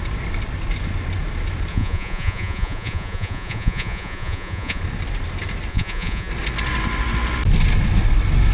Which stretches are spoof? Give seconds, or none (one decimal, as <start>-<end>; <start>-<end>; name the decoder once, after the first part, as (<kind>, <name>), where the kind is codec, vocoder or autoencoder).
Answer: 1.7-4.8 (vocoder, Vocos); 5.7-6.3